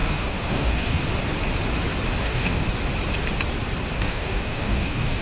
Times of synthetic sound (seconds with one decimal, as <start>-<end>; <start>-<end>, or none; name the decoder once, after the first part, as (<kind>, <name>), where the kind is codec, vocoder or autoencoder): 0.0-1.0 (codec, DAC); 2.2-2.6; 4.0-5.2